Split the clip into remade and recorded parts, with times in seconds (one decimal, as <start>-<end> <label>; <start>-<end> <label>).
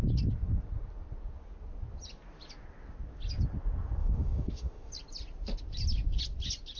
0.0-4.0 recorded; 4.0-4.9 remade; 4.9-6.8 recorded